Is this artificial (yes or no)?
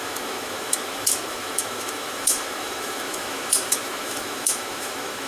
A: yes